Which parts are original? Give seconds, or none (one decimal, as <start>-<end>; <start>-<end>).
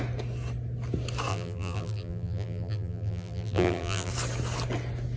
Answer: 0.0-1.3; 4.1-5.2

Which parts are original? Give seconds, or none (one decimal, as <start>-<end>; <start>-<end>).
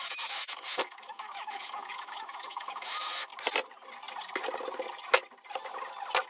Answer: 3.3-6.3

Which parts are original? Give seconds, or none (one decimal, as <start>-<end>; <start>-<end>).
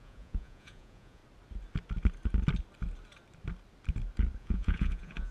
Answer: 1.2-4.4